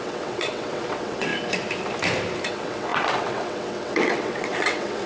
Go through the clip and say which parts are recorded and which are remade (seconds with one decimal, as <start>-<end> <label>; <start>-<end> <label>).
0.0-1.3 remade; 1.3-2.5 recorded; 2.5-5.1 remade